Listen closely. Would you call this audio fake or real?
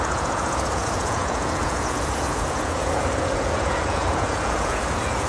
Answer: fake